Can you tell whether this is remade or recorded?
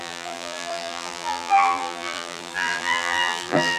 remade